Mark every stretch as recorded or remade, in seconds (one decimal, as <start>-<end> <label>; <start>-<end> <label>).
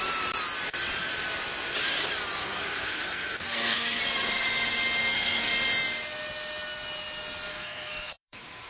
0.0-2.4 recorded; 2.4-4.0 remade; 4.0-5.0 recorded; 5.0-5.5 remade; 5.5-7.5 recorded; 7.5-8.7 remade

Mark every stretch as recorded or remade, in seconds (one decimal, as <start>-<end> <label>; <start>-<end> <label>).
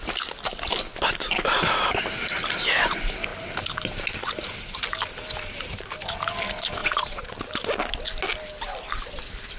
0.0-6.8 recorded; 6.8-7.3 remade; 7.3-9.6 recorded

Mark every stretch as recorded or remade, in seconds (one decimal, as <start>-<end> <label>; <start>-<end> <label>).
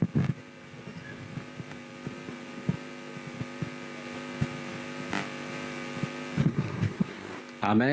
0.0-6.4 recorded; 6.4-7.4 remade; 7.4-7.9 recorded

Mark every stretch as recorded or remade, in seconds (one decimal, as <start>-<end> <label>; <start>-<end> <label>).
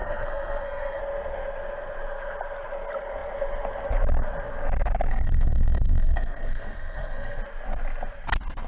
0.0-1.0 remade; 1.0-5.1 recorded; 5.1-7.4 remade; 7.4-8.7 recorded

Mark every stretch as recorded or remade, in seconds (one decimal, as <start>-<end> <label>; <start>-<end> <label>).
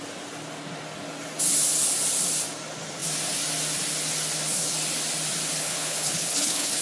0.0-5.6 recorded; 5.6-6.8 remade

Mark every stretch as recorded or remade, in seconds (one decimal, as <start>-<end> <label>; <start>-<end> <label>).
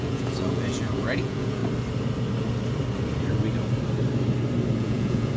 0.0-1.6 remade; 1.6-4.8 recorded; 4.8-5.4 remade